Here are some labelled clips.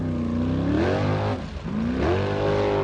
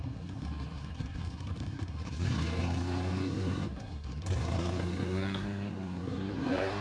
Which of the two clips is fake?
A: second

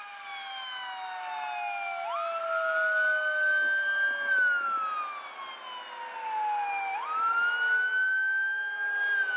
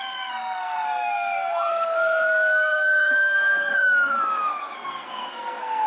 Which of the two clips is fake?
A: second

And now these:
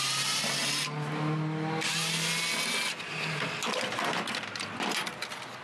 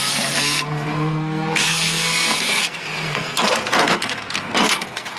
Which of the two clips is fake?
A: second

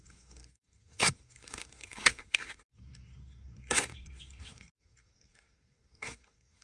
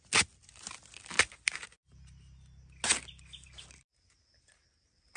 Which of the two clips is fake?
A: first